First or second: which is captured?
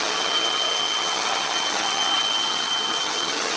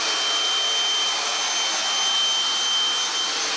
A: second